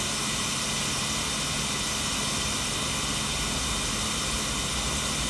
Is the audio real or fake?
real